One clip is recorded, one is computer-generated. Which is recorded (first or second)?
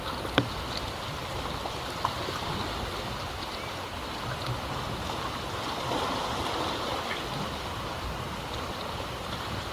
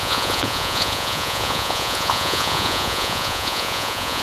first